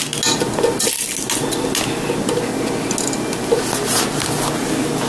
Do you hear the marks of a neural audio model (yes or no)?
no